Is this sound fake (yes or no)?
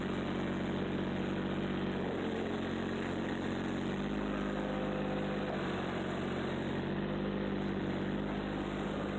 no